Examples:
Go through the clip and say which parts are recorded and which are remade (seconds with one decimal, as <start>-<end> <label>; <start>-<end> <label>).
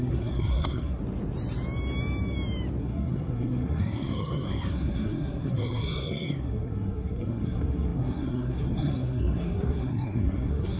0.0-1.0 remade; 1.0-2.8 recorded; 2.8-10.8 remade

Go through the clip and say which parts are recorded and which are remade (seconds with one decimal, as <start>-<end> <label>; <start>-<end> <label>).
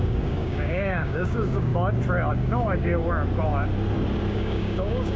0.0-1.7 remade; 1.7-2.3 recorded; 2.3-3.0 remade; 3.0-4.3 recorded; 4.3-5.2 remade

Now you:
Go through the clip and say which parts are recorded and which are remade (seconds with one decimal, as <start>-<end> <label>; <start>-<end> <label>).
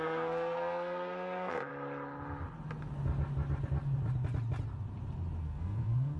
0.0-1.7 remade; 1.7-5.4 recorded; 5.4-6.2 remade